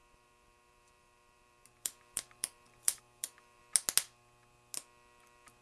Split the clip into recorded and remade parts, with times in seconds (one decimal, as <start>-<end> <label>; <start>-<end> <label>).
0.0-3.6 remade; 3.6-5.6 recorded